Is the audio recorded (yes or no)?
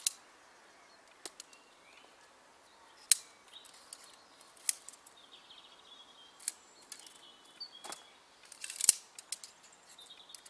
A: yes